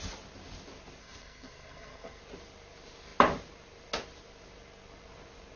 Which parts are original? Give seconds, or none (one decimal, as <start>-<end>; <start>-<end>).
0.0-1.0; 2.2-5.6